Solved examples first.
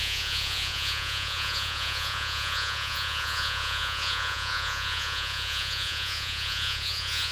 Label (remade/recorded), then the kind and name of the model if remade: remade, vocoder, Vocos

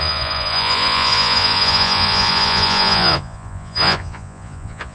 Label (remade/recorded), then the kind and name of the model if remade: remade, vocoder, Vocos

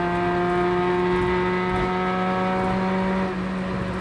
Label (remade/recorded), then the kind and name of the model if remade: recorded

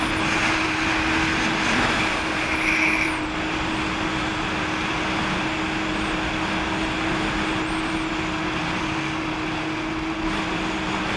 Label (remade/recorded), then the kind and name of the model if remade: recorded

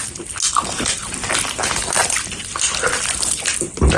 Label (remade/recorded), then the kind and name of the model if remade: recorded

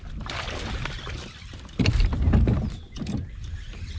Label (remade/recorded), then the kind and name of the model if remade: recorded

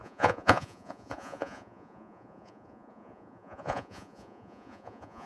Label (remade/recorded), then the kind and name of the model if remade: remade, vocoder, Vocos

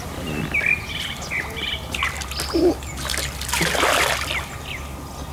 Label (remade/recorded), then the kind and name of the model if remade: recorded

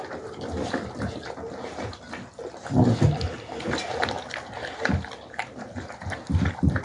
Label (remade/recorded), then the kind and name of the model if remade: recorded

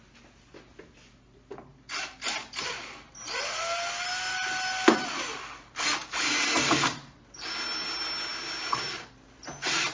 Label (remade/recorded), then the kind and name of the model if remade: recorded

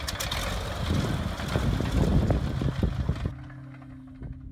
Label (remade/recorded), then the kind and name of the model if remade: recorded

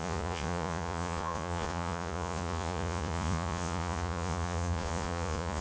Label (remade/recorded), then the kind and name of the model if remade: remade, vocoder, Vocos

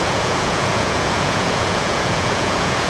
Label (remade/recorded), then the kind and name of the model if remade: remade, vocoder, Vocos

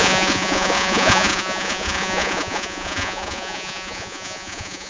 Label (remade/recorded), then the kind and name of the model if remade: remade, vocoder, Vocos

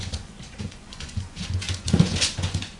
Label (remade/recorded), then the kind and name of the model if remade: remade, vocoder, Vocos